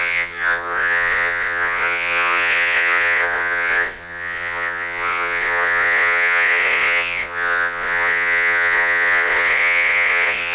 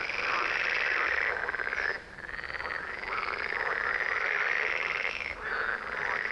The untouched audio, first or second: second